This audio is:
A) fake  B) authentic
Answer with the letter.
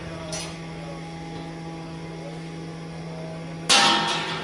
B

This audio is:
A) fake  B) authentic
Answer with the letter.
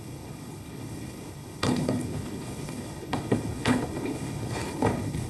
A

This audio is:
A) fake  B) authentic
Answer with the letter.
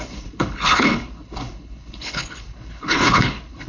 A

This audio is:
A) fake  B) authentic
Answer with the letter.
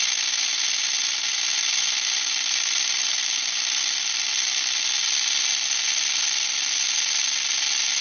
B